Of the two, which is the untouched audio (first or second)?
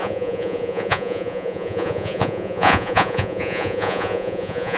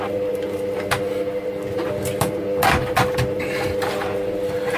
second